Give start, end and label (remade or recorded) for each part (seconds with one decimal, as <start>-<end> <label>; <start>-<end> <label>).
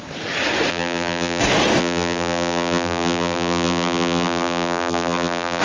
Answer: 0.0-0.7 recorded; 0.7-1.4 remade; 1.4-1.8 recorded; 1.8-5.6 remade